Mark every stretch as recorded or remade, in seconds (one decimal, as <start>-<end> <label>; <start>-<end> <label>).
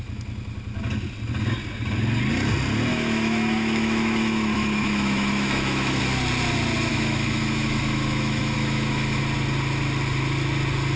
0.0-2.9 recorded; 2.9-6.0 remade; 6.0-6.9 recorded; 6.9-9.2 remade; 9.2-11.0 recorded